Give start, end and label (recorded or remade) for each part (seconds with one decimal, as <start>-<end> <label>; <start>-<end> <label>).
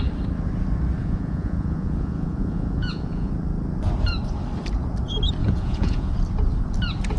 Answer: 0.0-1.0 recorded; 1.0-3.3 remade; 3.3-5.4 recorded; 5.4-6.1 remade; 6.1-7.2 recorded